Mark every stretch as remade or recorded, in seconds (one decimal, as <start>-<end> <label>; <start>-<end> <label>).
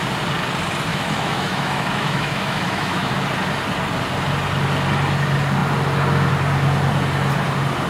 0.0-0.9 recorded; 0.9-3.1 remade; 3.1-7.9 recorded